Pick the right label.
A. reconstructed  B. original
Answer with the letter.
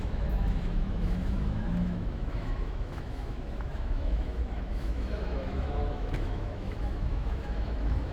A